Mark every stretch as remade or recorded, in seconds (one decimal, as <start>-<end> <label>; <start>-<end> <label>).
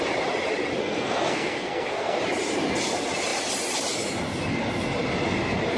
0.0-0.8 recorded; 0.8-2.2 remade; 2.2-5.8 recorded